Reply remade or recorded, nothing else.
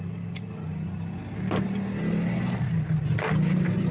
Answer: recorded